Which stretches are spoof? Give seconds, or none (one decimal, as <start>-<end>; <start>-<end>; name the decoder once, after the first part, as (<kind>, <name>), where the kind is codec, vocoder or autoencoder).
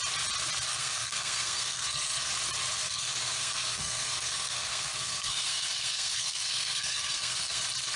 0.7-2.3 (codec, SNAC); 2.8-7.6